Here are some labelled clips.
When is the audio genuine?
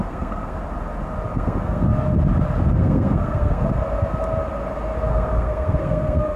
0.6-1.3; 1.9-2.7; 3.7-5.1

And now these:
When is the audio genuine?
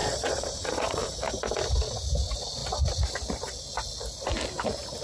1.0-5.0